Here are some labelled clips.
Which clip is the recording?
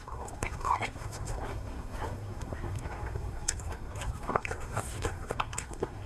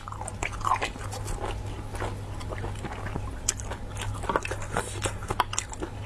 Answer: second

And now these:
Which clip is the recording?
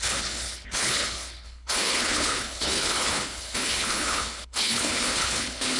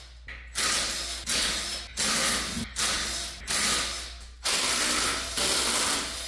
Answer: second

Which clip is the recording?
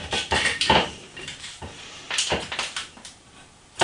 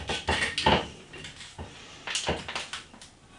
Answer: second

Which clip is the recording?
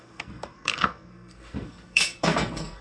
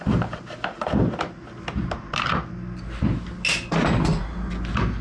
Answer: second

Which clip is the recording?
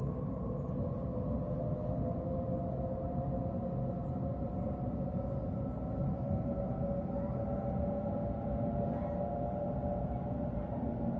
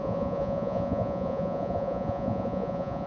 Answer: first